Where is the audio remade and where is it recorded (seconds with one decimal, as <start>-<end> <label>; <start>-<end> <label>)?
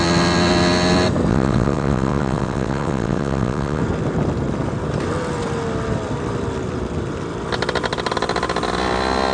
0.0-1.3 recorded; 1.3-3.8 remade; 3.8-9.3 recorded